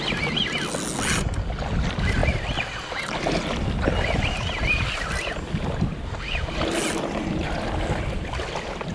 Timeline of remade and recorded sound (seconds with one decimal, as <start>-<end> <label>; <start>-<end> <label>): 0.0-8.9 recorded